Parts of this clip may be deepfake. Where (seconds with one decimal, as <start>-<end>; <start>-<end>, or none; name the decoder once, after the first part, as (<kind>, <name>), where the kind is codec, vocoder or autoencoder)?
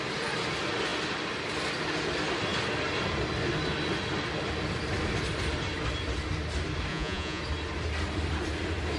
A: 6.9-7.4 (vocoder, Vocos)